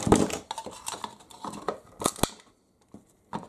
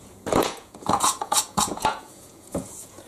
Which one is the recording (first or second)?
first